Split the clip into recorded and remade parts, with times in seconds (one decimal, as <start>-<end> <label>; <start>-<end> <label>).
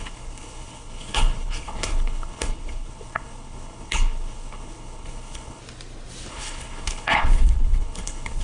0.0-5.6 remade; 5.6-6.3 recorded; 6.3-8.4 remade